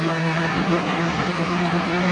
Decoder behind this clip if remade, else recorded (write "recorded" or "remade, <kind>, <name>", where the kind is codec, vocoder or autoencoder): remade, codec, SNAC